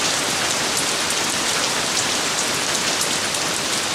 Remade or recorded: recorded